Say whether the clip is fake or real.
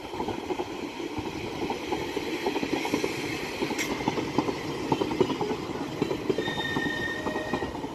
real